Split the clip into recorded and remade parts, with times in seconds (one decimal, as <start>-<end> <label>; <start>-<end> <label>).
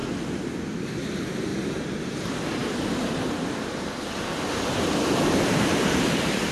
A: 0.0-6.5 remade